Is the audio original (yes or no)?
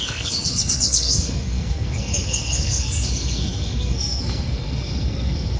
no